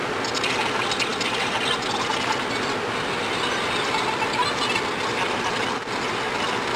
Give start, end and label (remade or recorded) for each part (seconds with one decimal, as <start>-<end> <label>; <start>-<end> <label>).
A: 0.0-6.8 recorded